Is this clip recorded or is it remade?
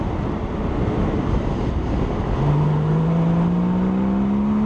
recorded